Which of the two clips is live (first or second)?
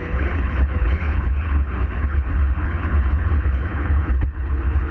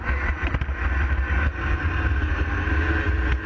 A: second